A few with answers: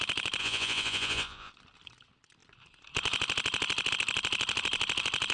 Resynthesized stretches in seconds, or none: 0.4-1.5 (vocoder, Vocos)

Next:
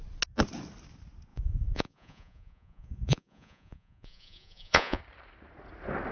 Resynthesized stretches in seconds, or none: 1.3-5.0 (vocoder, Vocos)

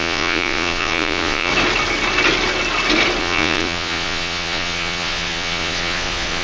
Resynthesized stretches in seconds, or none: 0.0-1.5 (vocoder, Vocos); 3.2-6.4

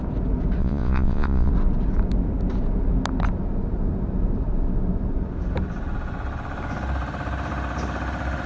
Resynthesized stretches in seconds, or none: 0.6-1.5 (vocoder, Vocos)

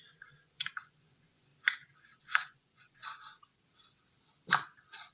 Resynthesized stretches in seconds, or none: 0.0-1.5 (vocoder, Vocos); 2.2-3.5

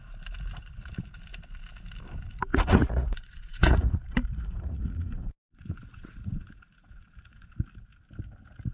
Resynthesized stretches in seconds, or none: 2.5-7.5 (vocoder, Vocos)